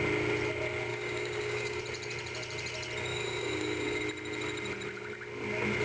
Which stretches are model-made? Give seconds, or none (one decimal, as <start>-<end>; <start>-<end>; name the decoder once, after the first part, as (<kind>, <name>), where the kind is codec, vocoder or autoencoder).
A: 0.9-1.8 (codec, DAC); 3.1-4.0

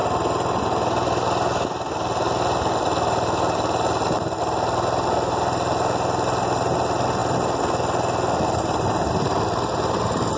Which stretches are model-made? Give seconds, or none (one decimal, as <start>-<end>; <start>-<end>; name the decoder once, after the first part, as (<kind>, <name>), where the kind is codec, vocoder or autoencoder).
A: none

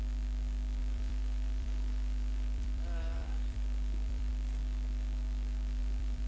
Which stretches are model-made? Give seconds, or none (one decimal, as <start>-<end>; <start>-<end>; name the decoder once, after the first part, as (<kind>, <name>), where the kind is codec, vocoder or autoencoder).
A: 0.8-4.3 (vocoder, BigVGAN v2); 5.8-6.3

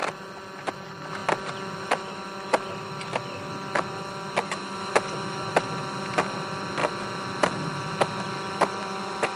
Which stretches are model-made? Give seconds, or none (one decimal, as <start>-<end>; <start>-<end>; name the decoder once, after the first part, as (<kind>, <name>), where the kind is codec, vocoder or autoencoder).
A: 0.0-0.7 (vocoder, BigVGAN v2); 6.8-7.8

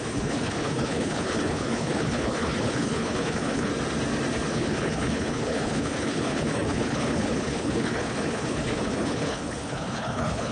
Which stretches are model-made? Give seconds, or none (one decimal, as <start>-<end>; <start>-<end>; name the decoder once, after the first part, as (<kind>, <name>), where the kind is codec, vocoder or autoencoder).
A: 0.0-3.7 (codec, HILCodec); 4.5-10.5